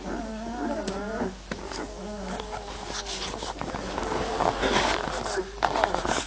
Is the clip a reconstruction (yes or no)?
yes